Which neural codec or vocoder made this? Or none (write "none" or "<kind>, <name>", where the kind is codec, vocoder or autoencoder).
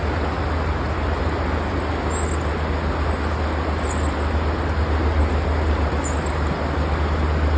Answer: none